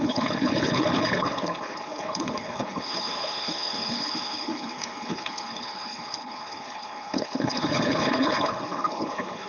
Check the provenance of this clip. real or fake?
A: fake